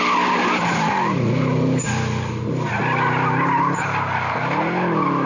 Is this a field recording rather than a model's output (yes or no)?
yes